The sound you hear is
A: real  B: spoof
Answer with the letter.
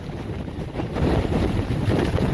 A